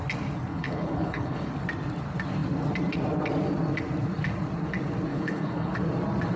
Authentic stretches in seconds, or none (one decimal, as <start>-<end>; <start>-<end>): 0.0-0.5; 1.5-5.1; 5.7-6.4